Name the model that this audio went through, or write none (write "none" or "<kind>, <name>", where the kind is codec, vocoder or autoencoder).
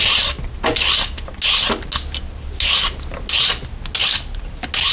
none